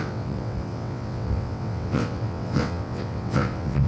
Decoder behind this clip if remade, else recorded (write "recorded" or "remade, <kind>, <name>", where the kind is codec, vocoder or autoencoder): remade, vocoder, WaveNeXt